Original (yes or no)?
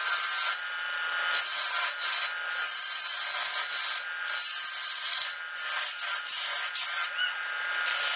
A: yes